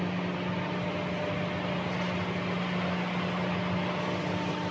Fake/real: real